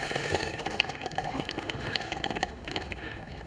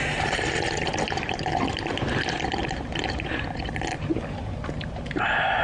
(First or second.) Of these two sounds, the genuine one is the second